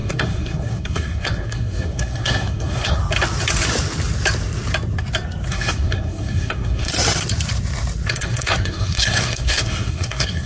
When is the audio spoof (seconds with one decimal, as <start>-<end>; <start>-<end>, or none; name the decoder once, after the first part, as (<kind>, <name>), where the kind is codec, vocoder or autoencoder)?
0.0-3.0 (codec, SNAC); 5.5-6.9; 8.1-10.5